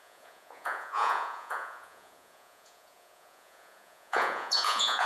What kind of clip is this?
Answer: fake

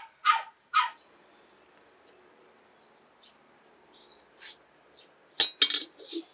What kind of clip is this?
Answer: real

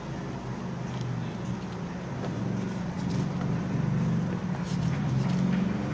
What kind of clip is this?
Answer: real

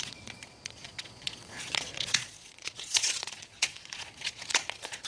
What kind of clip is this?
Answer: fake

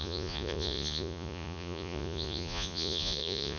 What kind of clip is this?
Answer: fake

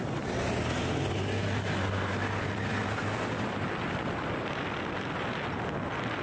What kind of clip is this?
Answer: real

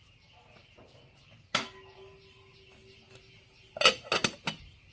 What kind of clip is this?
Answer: real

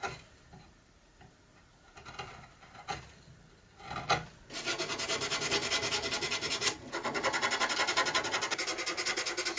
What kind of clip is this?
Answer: real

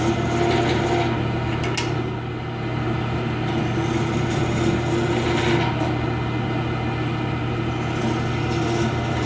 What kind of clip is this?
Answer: real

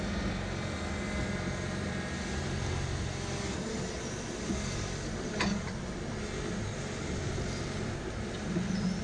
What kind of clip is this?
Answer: real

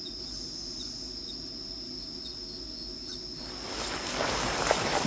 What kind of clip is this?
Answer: real